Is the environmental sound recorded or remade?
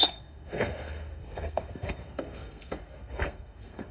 remade